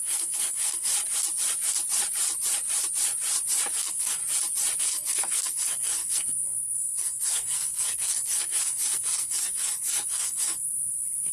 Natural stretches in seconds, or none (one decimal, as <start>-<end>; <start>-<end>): 0.9-3.8; 4.2-4.8